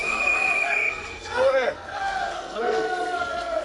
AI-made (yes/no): yes